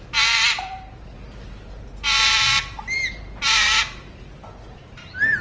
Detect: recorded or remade remade